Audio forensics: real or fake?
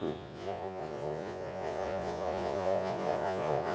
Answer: fake